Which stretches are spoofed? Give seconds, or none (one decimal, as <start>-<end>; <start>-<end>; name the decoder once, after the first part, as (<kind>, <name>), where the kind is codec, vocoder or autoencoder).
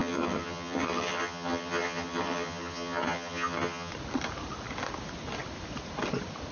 0.0-3.9 (vocoder, HiFi-GAN)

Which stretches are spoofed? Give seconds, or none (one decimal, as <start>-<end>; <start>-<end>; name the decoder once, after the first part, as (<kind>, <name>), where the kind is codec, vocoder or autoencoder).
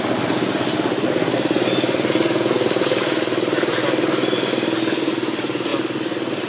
none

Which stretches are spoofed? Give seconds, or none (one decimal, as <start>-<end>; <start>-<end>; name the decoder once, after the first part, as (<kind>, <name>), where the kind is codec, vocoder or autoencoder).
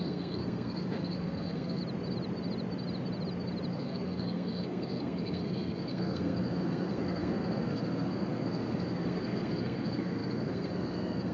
0.0-1.8 (codec, SNAC); 3.7-11.3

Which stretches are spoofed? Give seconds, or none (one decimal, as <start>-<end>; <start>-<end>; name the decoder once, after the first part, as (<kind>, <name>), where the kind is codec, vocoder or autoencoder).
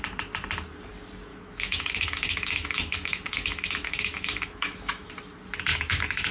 1.3-5.1 (autoencoder, DAC-VAE); 5.7-6.3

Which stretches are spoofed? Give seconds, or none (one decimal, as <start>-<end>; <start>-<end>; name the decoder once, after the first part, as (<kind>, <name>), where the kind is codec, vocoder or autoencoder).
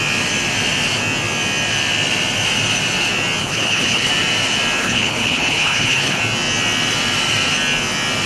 3.4-4.1 (codec, HILCodec); 4.8-6.2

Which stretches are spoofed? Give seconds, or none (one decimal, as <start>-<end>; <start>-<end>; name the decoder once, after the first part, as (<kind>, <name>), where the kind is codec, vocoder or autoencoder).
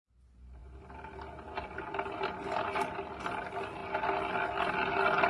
none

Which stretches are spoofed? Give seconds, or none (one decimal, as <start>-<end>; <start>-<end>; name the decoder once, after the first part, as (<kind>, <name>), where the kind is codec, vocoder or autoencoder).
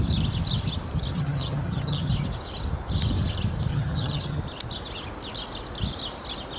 1.1-2.1 (vocoder, HiFi-GAN); 3.7-4.4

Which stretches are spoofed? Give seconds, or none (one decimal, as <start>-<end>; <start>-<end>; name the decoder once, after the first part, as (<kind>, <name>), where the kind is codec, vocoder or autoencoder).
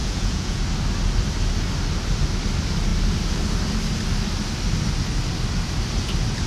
0.0-0.6 (vocoder, Vocos)